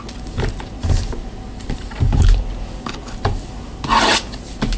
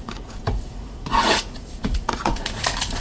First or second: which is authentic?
first